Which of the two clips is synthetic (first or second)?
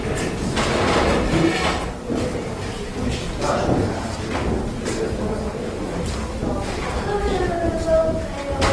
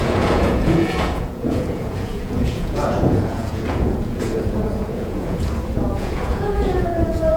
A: second